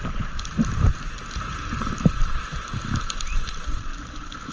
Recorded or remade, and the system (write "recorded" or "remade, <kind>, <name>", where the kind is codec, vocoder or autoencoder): recorded